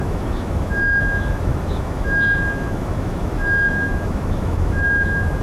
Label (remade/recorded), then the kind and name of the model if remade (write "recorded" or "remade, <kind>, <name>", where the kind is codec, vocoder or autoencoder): remade, autoencoder, DAC-VAE